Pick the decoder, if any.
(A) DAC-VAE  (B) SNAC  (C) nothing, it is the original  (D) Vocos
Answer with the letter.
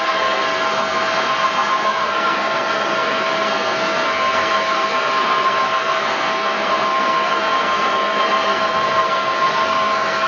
B